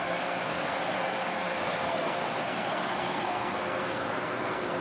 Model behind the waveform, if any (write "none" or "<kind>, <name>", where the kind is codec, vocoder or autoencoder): codec, SNAC